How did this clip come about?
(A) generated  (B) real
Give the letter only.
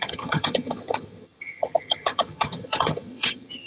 A